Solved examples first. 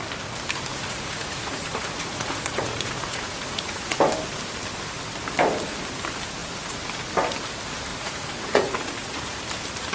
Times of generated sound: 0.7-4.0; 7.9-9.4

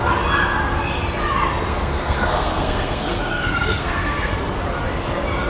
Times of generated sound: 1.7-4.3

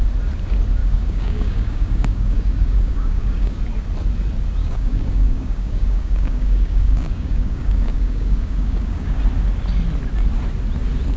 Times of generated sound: 0.8-3.6; 4.6-9.2